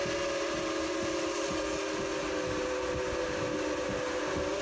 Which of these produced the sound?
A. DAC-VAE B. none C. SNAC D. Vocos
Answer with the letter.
B